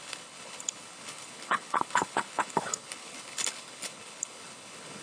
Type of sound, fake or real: fake